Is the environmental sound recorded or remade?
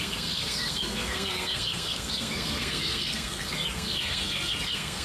remade